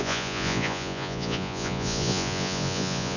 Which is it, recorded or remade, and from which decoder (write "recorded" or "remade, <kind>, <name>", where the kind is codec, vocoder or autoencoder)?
remade, vocoder, Vocos